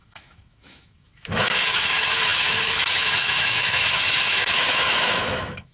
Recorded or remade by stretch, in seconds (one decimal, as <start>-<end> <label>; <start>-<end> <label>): 0.0-5.7 remade